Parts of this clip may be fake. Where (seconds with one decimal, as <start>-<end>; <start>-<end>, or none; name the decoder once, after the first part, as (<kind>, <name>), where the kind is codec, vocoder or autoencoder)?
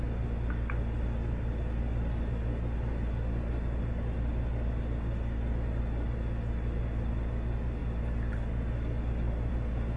none